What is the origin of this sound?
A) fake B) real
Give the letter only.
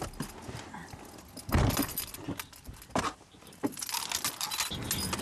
B